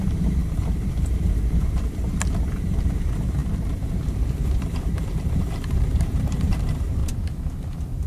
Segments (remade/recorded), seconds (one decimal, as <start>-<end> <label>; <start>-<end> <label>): 0.0-3.4 remade; 3.4-4.0 recorded; 4.0-7.0 remade; 7.0-7.6 recorded; 7.6-8.1 remade